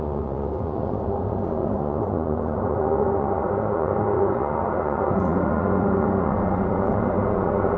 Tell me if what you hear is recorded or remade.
remade